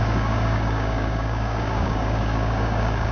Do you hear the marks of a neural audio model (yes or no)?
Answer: yes